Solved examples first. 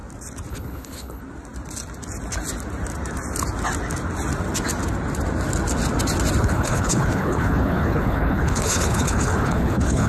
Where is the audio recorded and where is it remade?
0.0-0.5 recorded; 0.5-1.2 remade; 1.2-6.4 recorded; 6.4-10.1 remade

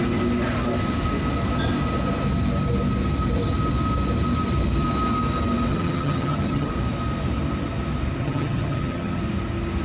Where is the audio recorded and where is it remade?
0.0-5.7 recorded; 5.7-6.7 remade; 6.7-8.2 recorded; 8.2-9.2 remade; 9.2-9.8 recorded